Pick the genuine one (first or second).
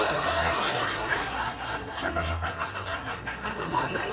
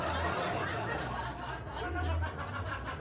second